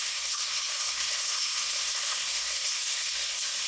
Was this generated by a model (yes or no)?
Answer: yes